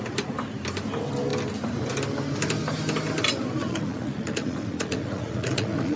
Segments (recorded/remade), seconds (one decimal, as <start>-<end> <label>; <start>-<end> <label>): 0.0-3.6 recorded; 3.6-6.0 remade